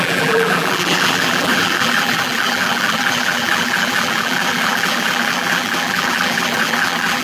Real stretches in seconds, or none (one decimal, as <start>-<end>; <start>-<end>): none

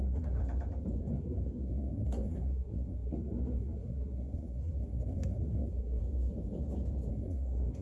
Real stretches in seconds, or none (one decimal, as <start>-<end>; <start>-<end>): 0.4-1.0; 6.0-7.1